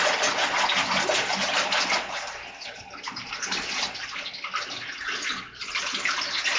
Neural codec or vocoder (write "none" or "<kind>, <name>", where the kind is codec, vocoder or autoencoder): none